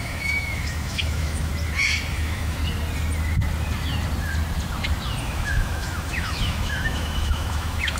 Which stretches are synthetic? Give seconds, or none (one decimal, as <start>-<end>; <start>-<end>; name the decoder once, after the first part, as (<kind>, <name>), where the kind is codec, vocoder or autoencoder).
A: 0.0-1.5 (autoencoder, DAC-VAE); 2.1-2.6; 5.2-8.0